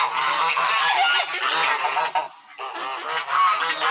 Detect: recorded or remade recorded